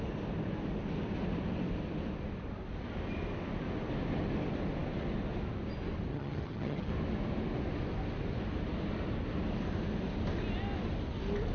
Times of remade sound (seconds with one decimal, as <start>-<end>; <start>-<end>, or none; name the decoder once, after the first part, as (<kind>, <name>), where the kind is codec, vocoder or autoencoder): 6.1-6.9 (vocoder, HiFi-GAN)